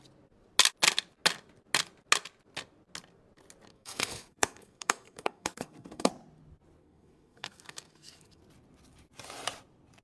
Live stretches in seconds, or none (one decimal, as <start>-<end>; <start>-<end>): 0.0-3.7; 6.1-6.8; 8.4-10.0